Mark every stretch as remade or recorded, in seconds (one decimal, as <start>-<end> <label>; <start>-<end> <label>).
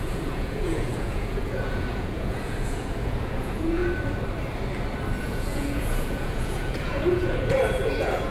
0.0-3.8 remade; 3.8-5.2 recorded; 5.2-8.3 remade